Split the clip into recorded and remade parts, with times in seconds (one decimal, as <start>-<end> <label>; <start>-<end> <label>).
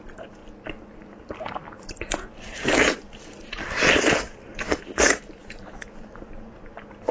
0.0-0.4 remade; 0.4-1.0 recorded; 1.0-7.1 remade